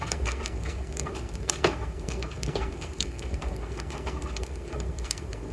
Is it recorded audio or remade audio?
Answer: remade